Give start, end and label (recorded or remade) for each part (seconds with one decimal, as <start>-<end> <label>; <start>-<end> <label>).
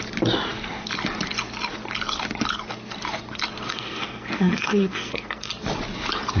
0.0-3.7 recorded; 3.7-5.5 remade; 5.5-6.4 recorded